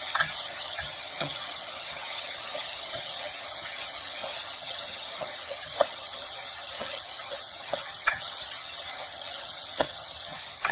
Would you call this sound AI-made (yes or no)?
yes